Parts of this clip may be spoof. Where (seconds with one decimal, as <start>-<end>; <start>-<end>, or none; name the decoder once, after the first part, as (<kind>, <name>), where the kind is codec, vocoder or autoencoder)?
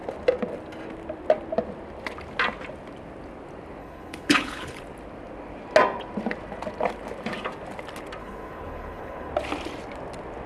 3.8-4.8 (codec, HILCodec); 8.2-9.3